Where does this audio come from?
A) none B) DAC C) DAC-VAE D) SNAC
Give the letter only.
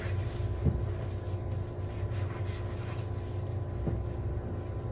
A